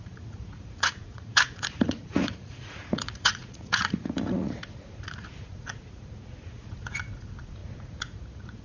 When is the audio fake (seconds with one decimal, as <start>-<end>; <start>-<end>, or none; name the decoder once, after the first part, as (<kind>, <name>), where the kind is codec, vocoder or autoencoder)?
0.0-8.6 (vocoder, Vocos)